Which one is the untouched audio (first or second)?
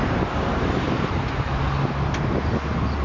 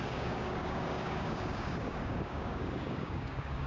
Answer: first